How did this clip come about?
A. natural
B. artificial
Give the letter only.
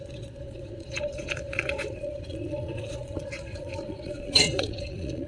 B